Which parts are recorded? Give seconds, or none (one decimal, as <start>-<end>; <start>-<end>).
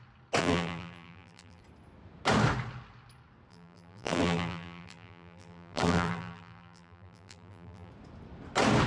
0.0-0.4; 1.6-3.5; 7.9-8.9